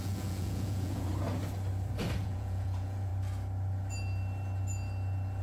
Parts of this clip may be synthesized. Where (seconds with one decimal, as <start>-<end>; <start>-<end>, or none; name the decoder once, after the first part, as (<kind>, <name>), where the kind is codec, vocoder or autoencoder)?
0.0-1.1 (vocoder, Vocos); 2.2-3.1